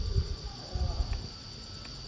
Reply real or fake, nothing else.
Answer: real